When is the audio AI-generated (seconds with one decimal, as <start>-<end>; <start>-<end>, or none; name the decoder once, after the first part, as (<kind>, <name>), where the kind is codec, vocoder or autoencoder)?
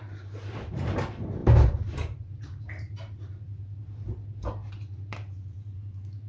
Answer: 0.0-6.3 (vocoder, BigVGAN v2)